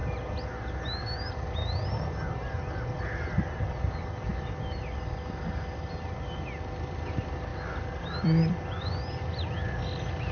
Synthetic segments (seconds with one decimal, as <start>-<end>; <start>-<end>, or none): 7.5-10.3